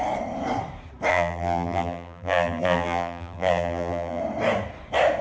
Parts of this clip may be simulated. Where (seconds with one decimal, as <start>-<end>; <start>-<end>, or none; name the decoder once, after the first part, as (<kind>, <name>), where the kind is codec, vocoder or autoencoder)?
1.1-4.2 (vocoder, BigVGAN v2)

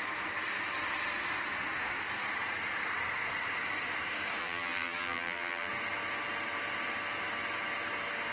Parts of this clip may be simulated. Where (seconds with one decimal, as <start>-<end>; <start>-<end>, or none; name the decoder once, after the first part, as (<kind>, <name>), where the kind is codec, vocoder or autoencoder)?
4.4-5.7 (vocoder, BigVGAN v2)